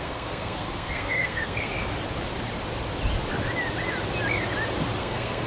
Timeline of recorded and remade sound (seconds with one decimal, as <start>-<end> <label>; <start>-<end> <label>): 0.0-1.7 remade; 1.7-5.0 recorded; 5.0-5.5 remade